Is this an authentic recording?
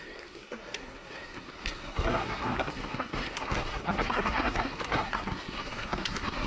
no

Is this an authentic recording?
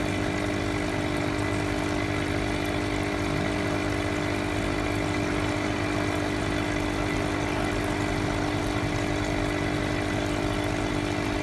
yes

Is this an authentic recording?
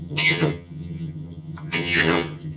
no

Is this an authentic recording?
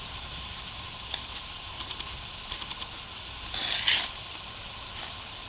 yes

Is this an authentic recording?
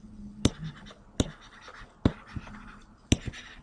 yes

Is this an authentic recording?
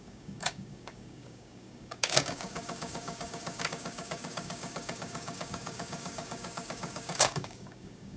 no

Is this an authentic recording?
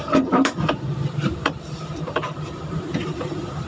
no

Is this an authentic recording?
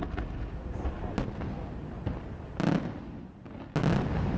yes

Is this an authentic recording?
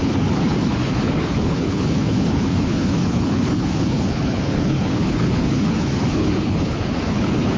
no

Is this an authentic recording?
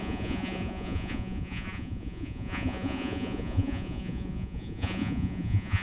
no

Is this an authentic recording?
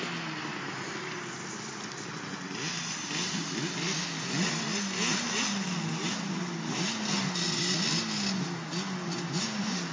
yes